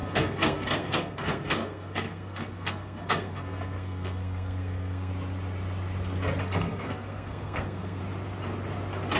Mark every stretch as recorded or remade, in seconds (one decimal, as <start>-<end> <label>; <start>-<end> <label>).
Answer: 0.0-5.1 remade; 5.1-6.4 recorded; 6.4-8.0 remade; 8.0-9.2 recorded

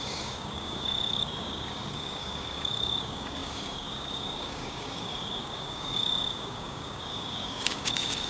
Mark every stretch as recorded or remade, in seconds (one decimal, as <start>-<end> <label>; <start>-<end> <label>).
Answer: 0.0-8.3 remade

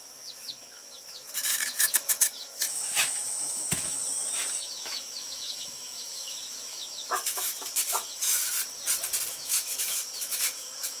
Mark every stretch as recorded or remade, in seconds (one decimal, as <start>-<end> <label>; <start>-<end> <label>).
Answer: 0.0-4.0 remade; 4.0-4.5 recorded; 4.5-8.4 remade; 8.4-9.3 recorded; 9.3-11.0 remade

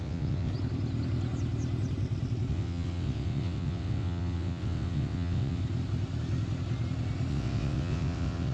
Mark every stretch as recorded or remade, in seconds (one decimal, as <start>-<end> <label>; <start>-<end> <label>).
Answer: 0.0-0.5 remade; 0.5-2.5 recorded; 2.5-5.6 remade; 5.6-7.3 recorded; 7.3-8.5 remade

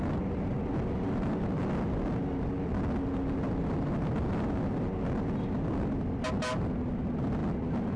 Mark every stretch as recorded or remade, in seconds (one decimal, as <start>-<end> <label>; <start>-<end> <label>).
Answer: 0.0-8.0 recorded